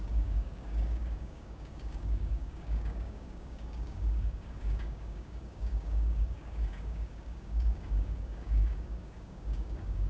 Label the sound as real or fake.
fake